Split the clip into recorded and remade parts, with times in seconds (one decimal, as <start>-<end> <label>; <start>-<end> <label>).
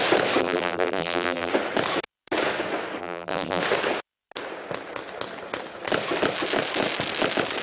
0.0-0.4 recorded; 0.4-1.5 remade; 1.5-3.0 recorded; 3.0-3.6 remade; 3.6-7.6 recorded